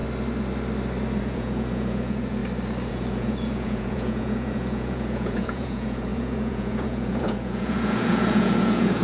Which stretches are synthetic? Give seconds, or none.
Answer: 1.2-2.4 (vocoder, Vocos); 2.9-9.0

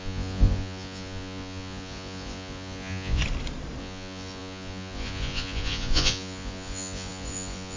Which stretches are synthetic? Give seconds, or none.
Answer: 0.0-3.2 (vocoder, Vocos); 3.8-7.8

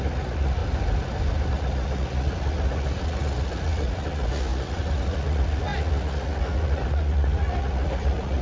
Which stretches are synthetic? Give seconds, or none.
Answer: 0.0-0.6 (vocoder, Vocos); 1.5-8.4